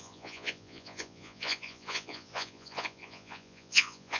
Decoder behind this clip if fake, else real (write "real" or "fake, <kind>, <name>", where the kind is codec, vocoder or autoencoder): fake, vocoder, Vocos